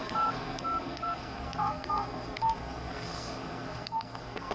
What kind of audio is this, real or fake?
fake